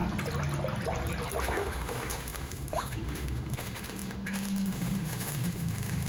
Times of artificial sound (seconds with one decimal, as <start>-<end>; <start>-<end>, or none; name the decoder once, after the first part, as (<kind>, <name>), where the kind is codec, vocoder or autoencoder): 1.4-6.1 (autoencoder, DAC-VAE)

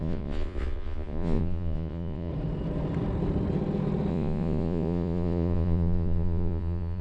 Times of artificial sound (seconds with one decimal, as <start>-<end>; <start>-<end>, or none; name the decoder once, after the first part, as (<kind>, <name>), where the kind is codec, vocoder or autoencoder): 0.0-2.3 (vocoder, Vocos); 4.1-7.0

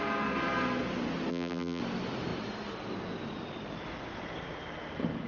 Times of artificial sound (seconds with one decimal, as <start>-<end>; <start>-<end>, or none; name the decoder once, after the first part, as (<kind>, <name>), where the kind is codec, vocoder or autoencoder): 1.3-1.8 (vocoder, BigVGAN v2)

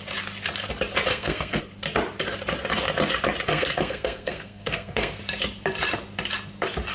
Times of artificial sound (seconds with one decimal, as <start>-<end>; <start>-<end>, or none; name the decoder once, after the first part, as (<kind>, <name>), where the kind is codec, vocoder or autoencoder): 1.1-1.6 (codec, SNAC); 3.5-5.2

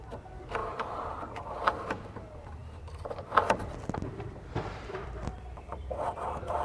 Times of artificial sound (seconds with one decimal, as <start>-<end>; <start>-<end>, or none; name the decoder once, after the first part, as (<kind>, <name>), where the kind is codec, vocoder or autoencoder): 0.0-0.6 (vocoder, BigVGAN v2); 1.6-6.6

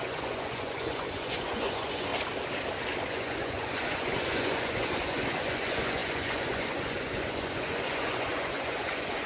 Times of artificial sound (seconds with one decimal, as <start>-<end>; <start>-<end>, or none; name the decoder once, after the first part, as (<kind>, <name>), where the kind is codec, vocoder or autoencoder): 0.0-2.1 (vocoder, Vocos); 3.1-9.3